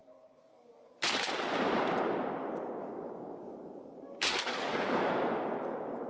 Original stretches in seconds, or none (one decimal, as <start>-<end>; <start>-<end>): 1.3-2.8; 5.1-6.1